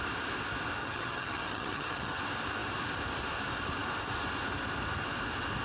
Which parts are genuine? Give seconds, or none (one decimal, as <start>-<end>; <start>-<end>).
0.0-0.8; 2.2-5.6